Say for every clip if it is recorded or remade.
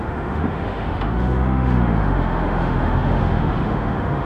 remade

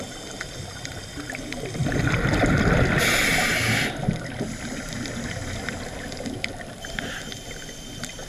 recorded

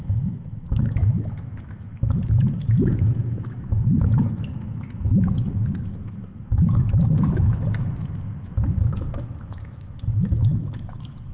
remade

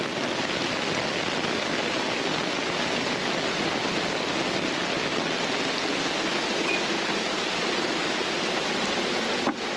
recorded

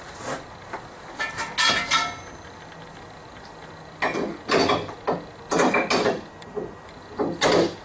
recorded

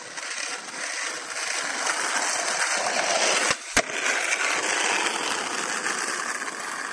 recorded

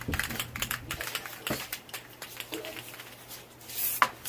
recorded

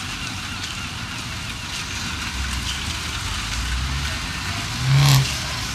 recorded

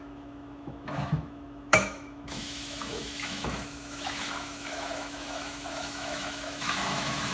remade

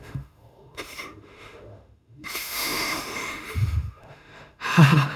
remade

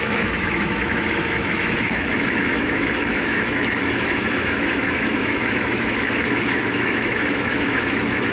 remade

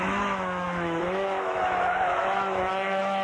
remade